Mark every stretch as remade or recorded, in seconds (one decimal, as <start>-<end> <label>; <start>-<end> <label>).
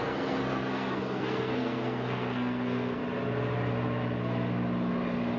0.0-3.0 remade; 3.0-5.4 recorded